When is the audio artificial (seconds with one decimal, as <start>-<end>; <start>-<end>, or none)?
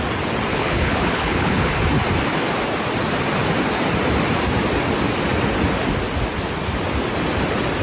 0.5-1.7